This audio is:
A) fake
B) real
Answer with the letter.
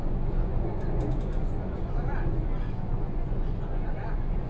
A